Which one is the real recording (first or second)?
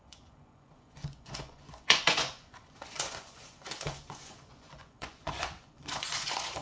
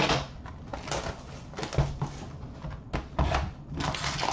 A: second